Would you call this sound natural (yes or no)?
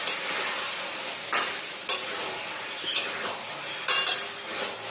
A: yes